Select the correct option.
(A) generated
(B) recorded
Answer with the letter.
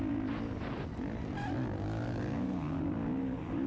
B